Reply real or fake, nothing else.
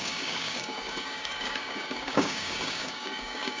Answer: fake